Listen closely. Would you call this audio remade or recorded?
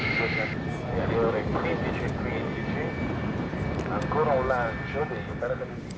recorded